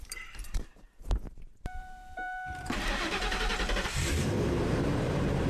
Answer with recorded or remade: remade